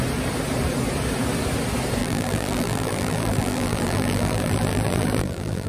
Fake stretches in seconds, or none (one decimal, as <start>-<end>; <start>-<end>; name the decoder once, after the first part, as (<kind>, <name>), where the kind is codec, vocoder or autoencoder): 2.0-5.7 (vocoder, BigVGAN v2)